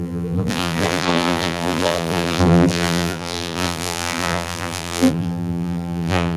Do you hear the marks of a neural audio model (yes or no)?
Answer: yes